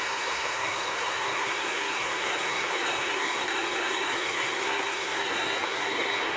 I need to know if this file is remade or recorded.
remade